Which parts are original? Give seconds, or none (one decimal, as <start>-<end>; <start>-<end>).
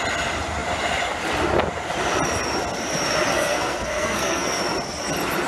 0.0-3.3; 4.6-5.5